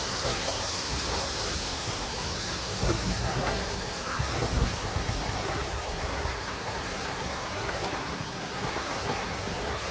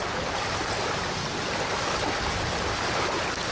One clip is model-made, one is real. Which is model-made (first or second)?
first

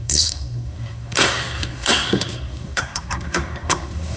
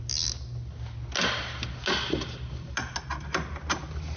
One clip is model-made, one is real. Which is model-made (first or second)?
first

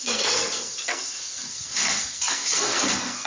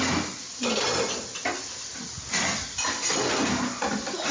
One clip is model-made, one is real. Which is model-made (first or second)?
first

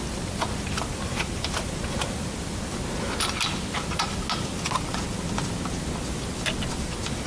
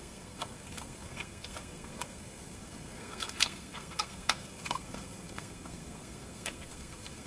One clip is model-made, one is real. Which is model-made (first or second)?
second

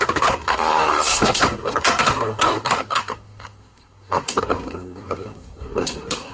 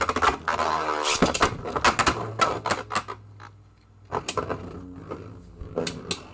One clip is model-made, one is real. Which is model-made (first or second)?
first